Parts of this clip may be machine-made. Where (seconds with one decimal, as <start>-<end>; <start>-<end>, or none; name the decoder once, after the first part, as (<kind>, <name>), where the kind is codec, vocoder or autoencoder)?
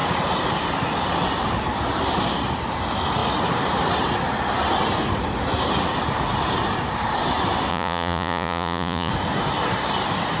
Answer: 7.7-9.1 (vocoder, Vocos)